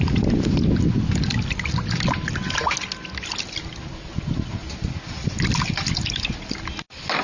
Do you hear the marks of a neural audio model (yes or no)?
no